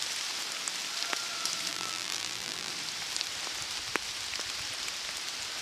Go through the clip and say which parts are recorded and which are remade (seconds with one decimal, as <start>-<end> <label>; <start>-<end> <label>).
0.0-1.7 recorded; 1.7-2.7 remade; 2.7-5.6 recorded